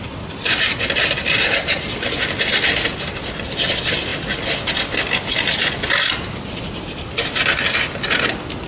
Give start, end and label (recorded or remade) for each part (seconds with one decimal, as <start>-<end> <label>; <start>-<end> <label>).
0.0-8.7 recorded